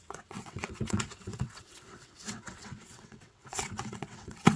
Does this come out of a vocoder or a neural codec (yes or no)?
yes